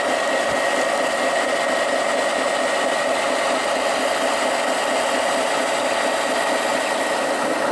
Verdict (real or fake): real